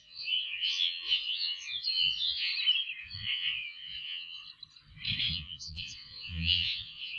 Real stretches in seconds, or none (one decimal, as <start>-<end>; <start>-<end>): 2.5-3.0; 4.4-5.2